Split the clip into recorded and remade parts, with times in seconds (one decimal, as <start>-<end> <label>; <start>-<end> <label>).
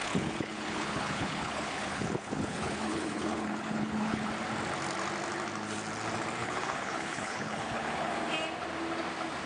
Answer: 0.0-4.3 remade; 4.3-6.4 recorded; 6.4-8.1 remade; 8.1-9.5 recorded